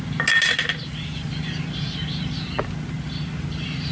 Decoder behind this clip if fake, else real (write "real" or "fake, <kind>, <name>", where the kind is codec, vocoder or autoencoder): real